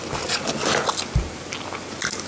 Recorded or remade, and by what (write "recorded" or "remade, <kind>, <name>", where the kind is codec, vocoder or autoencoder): recorded